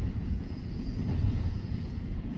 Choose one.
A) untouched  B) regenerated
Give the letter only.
B